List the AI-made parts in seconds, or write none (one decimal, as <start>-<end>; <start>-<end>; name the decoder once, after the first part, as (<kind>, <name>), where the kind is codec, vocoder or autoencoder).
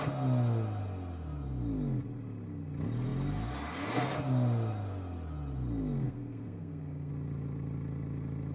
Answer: 6.0-7.1 (codec, SNAC)